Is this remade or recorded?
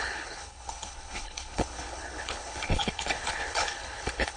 remade